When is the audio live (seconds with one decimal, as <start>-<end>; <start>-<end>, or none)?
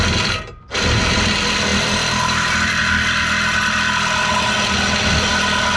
0.0-5.8